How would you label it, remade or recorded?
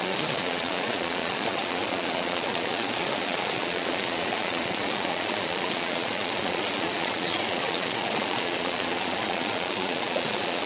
remade